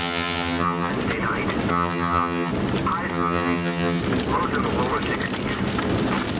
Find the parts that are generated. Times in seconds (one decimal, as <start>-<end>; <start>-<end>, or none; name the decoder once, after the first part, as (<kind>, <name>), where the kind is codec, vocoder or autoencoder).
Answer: 0.0-0.9 (vocoder, HiFi-GAN); 1.7-2.5; 3.1-4.0